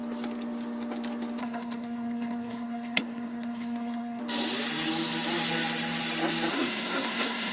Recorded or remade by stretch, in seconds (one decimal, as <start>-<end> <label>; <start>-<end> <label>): 0.0-1.4 recorded; 1.4-4.2 remade; 4.2-6.5 recorded; 6.5-7.5 remade